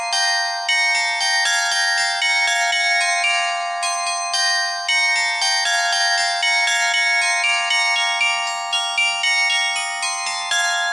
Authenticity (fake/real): real